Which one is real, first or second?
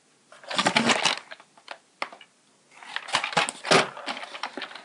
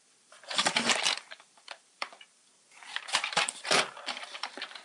first